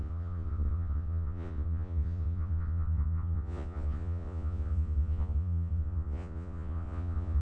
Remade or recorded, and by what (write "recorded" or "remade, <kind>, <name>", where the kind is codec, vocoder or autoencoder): remade, vocoder, Vocos